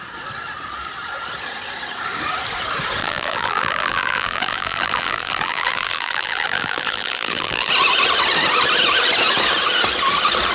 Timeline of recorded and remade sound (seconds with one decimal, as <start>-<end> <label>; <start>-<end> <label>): 0.0-3.0 recorded; 3.0-7.7 remade; 7.7-10.5 recorded